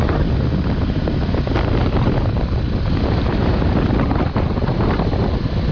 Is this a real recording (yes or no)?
yes